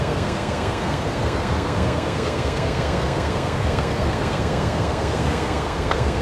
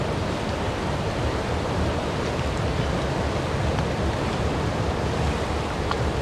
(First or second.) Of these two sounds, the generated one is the first